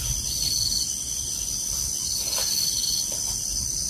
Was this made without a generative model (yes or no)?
yes